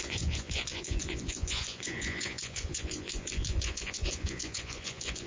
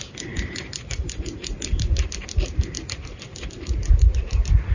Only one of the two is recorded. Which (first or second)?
second